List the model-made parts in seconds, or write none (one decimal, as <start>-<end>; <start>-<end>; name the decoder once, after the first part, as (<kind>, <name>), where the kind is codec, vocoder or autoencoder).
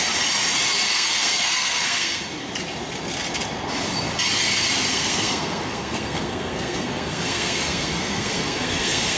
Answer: 0.9-2.2 (codec, SNAC); 4.9-9.2